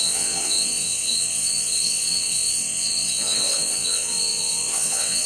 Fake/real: fake